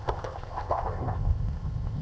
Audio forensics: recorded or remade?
remade